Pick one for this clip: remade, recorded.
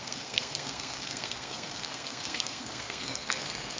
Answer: remade